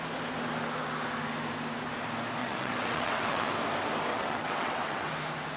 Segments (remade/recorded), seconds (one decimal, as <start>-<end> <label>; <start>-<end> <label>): 0.0-2.4 recorded; 2.4-3.5 remade; 3.5-4.1 recorded; 4.1-5.1 remade; 5.1-5.6 recorded